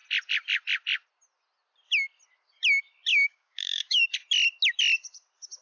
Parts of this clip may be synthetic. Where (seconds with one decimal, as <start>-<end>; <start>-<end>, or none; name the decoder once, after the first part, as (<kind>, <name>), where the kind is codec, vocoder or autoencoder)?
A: 3.1-4.0 (codec, DAC)